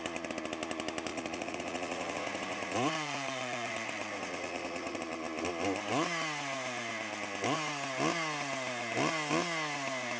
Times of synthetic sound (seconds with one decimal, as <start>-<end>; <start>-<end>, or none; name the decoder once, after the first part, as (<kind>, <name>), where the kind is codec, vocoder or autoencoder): 1.1-5.0 (vocoder, Vocos)

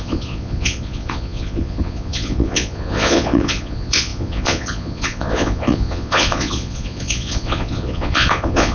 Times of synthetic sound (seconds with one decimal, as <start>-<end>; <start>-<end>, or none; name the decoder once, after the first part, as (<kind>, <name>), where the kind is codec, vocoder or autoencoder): 0.0-8.7 (vocoder, Vocos)

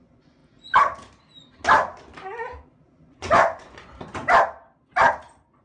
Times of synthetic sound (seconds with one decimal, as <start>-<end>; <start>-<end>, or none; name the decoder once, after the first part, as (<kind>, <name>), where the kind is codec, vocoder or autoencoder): 0.0-0.4 (vocoder, Vocos); 3.0-4.2

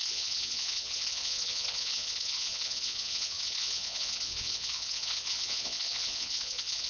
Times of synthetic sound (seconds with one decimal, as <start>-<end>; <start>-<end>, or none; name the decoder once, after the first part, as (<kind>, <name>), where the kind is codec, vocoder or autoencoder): 0.0-6.9 (vocoder, Vocos)

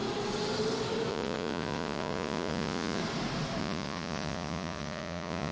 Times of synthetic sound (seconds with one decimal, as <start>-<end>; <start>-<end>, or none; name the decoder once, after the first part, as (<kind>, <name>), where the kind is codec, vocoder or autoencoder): 1.1-3.0 (vocoder, Vocos); 3.6-5.5

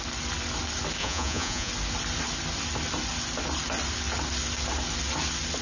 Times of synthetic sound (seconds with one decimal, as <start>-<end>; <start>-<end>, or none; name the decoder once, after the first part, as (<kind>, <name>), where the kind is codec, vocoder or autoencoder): 1.0-1.7 (vocoder, Vocos)